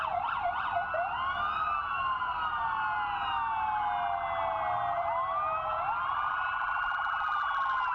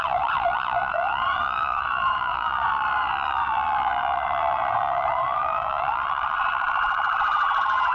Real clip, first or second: first